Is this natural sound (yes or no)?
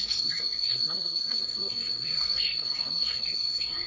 no